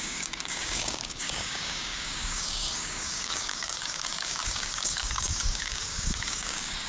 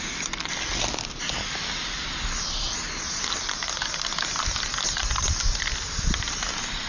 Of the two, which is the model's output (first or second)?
first